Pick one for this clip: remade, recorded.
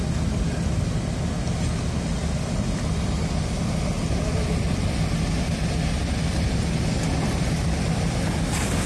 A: recorded